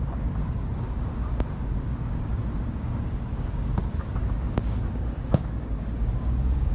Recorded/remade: remade